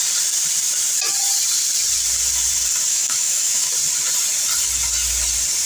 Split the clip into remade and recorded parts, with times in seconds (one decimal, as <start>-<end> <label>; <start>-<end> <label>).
0.0-2.9 recorded; 2.9-3.7 remade; 3.7-5.7 recorded